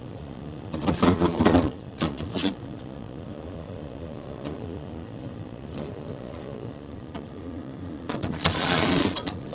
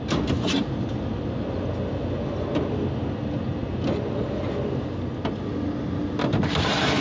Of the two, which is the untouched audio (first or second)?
second